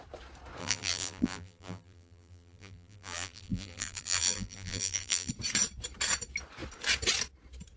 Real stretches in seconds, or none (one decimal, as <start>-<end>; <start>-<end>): 0.0-0.6; 5.3-7.8